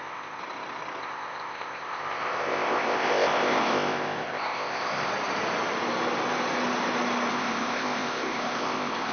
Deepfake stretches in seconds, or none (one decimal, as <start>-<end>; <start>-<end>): 0.0-0.4; 1.0-5.1; 7.3-9.1